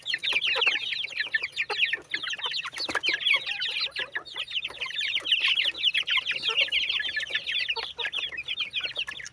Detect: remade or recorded recorded